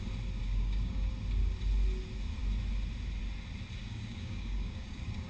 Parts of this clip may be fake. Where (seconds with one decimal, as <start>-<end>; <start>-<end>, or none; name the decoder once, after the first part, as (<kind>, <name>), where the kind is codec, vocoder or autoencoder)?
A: 0.4-1.1 (codec, DAC); 3.8-5.3